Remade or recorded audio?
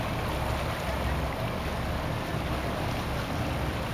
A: recorded